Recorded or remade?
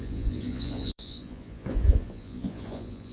remade